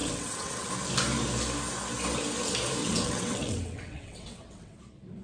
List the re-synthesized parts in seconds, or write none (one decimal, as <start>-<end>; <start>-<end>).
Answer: 0.0-0.7; 2.8-4.8